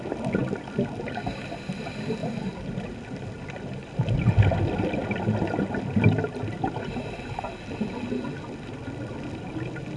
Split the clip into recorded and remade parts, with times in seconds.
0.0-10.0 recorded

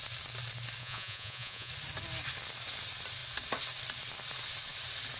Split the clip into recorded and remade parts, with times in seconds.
0.0-0.8 recorded; 0.8-1.7 remade; 1.7-5.2 recorded

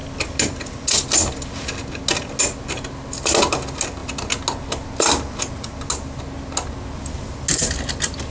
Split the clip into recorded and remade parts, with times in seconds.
0.0-8.3 recorded

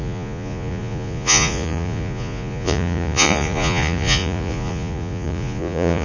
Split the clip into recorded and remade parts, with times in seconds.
0.0-6.0 remade

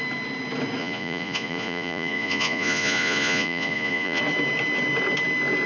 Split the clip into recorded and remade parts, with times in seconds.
0.0-0.8 recorded; 0.8-4.2 remade; 4.2-5.7 recorded